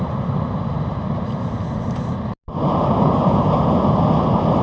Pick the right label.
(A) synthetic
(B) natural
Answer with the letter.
B